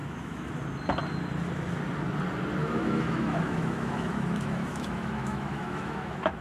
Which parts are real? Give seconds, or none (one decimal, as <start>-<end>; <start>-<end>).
0.5-2.6